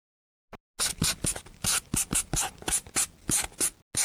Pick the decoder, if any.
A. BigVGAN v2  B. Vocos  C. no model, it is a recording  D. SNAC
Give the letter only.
C